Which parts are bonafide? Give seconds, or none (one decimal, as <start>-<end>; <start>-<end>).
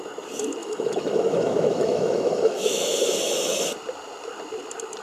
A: 0.0-0.6; 3.6-5.0